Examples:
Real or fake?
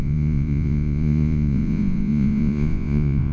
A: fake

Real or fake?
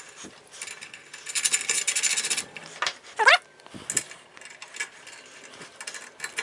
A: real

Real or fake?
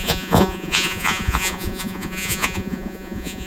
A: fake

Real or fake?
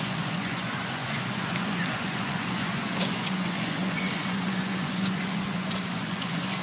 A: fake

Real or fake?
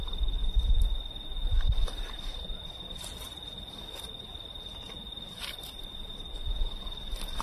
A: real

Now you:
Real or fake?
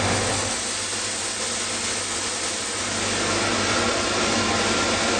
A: real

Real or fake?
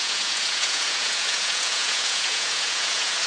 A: fake